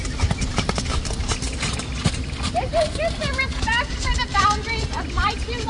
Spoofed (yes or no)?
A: yes